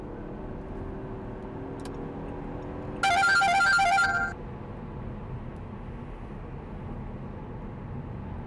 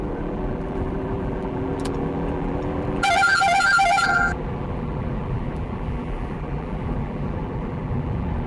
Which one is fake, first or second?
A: second